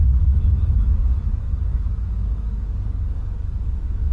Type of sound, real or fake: fake